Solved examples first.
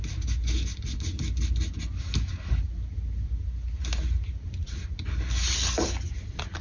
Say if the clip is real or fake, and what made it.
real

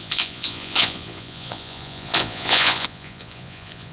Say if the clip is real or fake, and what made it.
fake, vocoder, Vocos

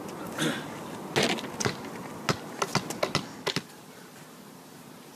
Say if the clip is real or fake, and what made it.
real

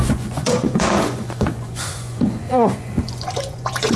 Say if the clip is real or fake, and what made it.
fake, vocoder, Vocos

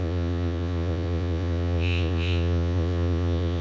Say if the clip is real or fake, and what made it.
fake, vocoder, Vocos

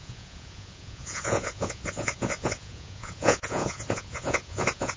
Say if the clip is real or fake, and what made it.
fake, vocoder, Vocos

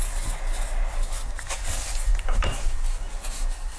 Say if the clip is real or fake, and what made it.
real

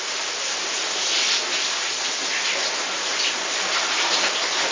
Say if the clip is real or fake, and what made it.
real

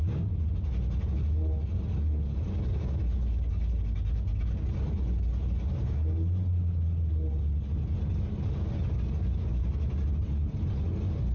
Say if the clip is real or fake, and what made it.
real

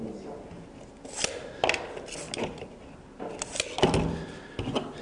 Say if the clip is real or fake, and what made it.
real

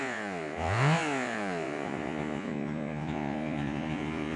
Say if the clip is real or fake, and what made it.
fake, vocoder, Vocos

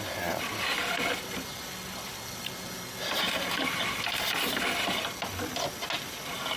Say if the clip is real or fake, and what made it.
real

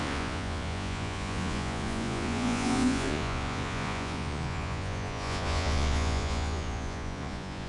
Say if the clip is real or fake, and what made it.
fake, vocoder, Vocos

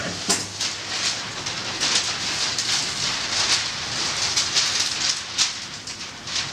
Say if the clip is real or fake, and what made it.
real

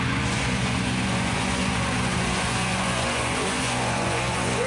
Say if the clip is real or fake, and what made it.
fake, vocoder, Vocos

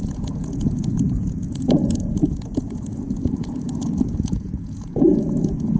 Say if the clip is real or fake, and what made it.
fake, vocoder, Vocos